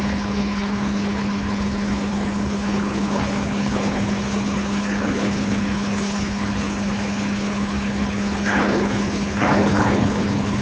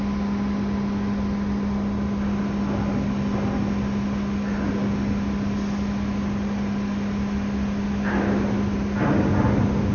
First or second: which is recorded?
second